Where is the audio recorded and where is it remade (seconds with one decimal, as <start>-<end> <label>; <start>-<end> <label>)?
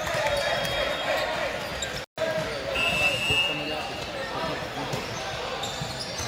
0.0-6.3 recorded